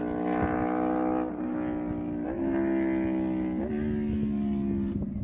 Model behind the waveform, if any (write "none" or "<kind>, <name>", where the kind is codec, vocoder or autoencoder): none